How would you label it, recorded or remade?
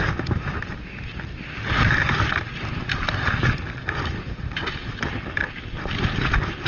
recorded